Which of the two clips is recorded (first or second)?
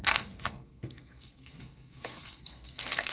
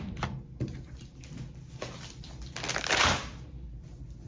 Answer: second